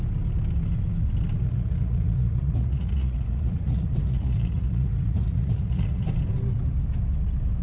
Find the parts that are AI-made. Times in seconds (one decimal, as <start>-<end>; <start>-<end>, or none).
1.4-6.0